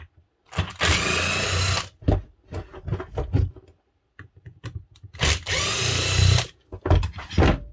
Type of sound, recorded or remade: recorded